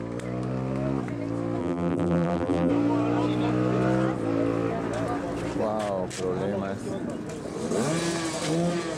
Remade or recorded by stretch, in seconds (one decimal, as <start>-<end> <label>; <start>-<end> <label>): 0.0-1.6 recorded; 1.6-2.7 remade; 2.7-9.0 recorded